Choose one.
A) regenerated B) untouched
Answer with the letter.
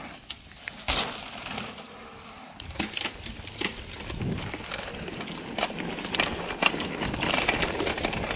A